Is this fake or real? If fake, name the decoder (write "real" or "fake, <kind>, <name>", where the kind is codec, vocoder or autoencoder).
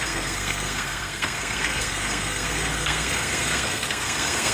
fake, codec, SNAC